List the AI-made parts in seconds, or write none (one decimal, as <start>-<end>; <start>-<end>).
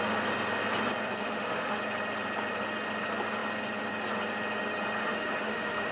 1.2-1.8; 5.0-5.9